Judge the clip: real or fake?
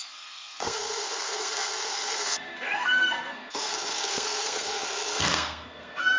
fake